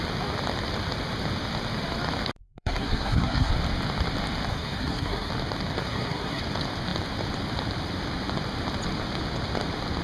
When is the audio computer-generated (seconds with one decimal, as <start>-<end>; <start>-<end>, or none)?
2.4-3.5; 4.5-5.3; 5.8-6.4